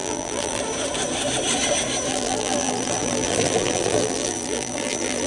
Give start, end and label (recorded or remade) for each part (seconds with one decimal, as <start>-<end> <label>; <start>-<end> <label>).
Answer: 0.0-0.6 remade; 0.6-2.1 recorded; 2.1-5.3 remade